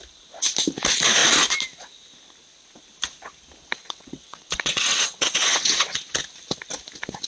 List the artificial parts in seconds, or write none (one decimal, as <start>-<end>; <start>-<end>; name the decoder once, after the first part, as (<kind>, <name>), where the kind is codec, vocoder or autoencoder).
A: 3.8-6.0 (vocoder, WaveNeXt)